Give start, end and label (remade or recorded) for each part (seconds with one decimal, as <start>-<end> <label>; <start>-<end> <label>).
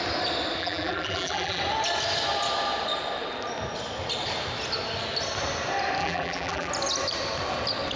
0.0-0.6 recorded; 0.6-1.6 remade; 1.6-6.0 recorded; 6.0-6.7 remade; 6.7-8.0 recorded